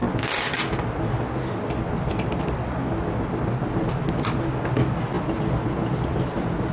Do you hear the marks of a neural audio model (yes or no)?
no